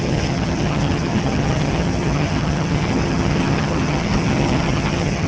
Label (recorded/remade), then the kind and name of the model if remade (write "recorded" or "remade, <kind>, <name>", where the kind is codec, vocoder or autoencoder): remade, vocoder, HiFi-GAN